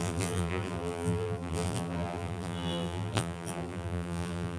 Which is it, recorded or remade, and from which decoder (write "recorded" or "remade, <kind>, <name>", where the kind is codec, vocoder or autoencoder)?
remade, vocoder, BigVGAN v2